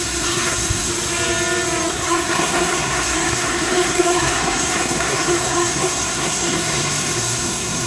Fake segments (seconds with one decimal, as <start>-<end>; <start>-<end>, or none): 0.0-0.9; 1.9-7.9